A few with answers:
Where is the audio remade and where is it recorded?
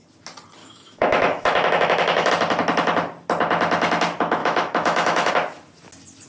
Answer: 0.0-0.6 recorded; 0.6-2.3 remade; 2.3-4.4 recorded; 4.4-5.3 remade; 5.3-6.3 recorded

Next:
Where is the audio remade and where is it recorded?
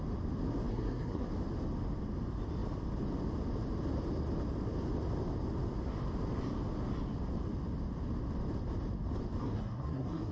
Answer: 0.0-0.7 recorded; 0.7-1.3 remade; 1.3-9.4 recorded; 9.4-10.3 remade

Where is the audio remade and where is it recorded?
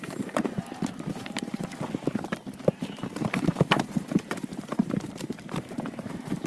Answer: 0.0-1.7 remade; 1.7-2.8 recorded; 2.8-6.5 remade